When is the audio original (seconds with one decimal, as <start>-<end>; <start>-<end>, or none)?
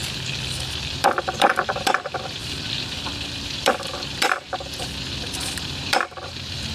0.0-0.7; 2.4-3.3